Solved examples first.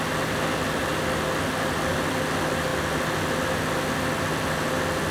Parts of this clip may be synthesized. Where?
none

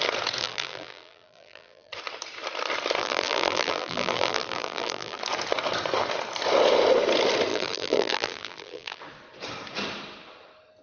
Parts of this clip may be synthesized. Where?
0.4-1.9 (vocoder, BigVGAN v2); 3.0-5.2; 7.5-9.0

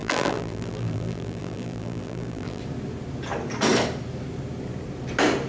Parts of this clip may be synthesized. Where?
0.0-2.6 (vocoder, BigVGAN v2)

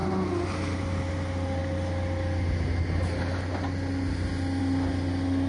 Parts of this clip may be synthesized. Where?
none

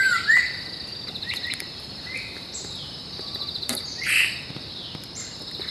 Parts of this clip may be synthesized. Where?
0.9-4.3 (vocoder, BigVGAN v2)

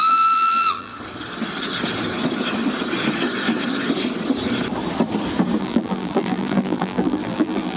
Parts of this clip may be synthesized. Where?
0.0-0.9 (vocoder, BigVGAN v2); 5.6-7.8

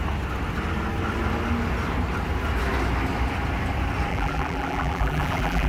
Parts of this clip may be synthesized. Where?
4.1-5.7 (vocoder, BigVGAN v2)

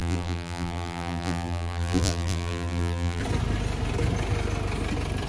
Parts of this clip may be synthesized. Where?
0.0-3.2 (vocoder, BigVGAN v2)